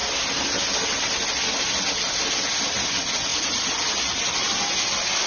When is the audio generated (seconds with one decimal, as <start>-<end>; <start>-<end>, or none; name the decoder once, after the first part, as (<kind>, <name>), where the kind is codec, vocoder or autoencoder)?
3.3-4.3 (vocoder, BigVGAN v2)